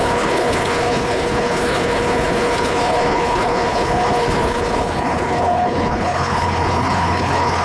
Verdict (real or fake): fake